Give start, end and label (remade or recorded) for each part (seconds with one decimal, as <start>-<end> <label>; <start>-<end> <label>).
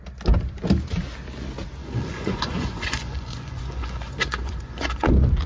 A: 0.0-1.8 recorded; 1.8-5.1 remade; 5.1-5.5 recorded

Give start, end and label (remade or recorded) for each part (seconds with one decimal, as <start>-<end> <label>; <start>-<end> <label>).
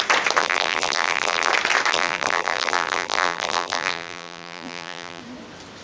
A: 0.0-0.4 recorded; 0.4-1.5 remade; 1.5-1.9 recorded; 1.9-5.2 remade; 5.2-5.8 recorded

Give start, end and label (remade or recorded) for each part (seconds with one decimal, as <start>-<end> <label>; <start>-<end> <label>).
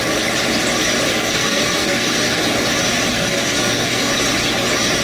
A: 0.0-1.1 recorded; 1.1-2.4 remade; 2.4-3.1 recorded; 3.1-4.1 remade; 4.1-5.0 recorded